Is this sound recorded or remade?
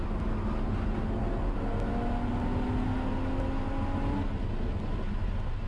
recorded